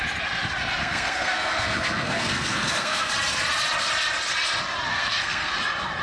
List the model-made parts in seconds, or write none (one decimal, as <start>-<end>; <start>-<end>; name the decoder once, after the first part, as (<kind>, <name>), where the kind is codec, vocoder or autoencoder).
0.8-3.1 (codec, SNAC); 4.9-5.5

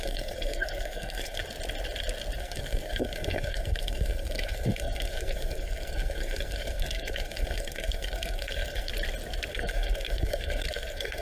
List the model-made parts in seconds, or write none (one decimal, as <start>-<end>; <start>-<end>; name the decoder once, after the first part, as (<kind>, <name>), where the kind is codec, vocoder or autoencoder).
0.0-1.4 (codec, SNAC); 2.4-8.9; 9.5-11.2

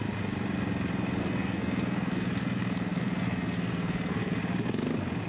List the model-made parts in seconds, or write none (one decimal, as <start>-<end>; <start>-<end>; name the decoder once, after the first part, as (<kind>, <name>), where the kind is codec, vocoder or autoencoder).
1.2-4.4 (codec, SNAC)

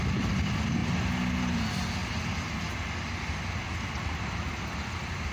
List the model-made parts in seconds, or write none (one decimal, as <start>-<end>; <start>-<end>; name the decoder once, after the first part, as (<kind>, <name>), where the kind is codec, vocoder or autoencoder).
none